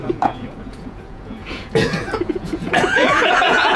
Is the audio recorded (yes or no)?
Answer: no